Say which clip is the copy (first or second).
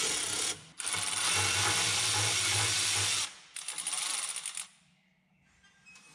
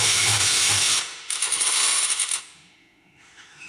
second